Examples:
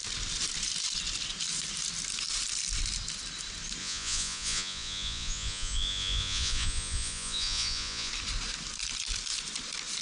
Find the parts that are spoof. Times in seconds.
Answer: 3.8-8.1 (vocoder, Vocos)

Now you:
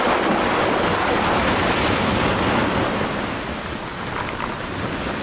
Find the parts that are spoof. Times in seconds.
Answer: none